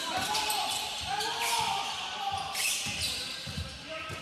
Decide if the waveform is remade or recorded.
remade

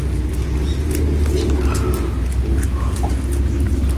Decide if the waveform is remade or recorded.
recorded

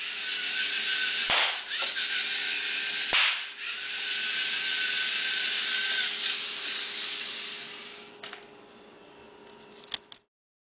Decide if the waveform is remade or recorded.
recorded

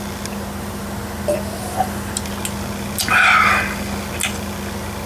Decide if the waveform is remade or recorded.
recorded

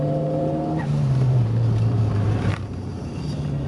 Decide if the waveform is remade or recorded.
remade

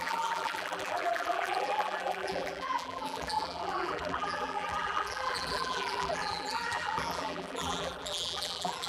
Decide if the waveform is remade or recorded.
remade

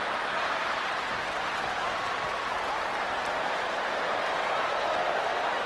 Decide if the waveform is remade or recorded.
remade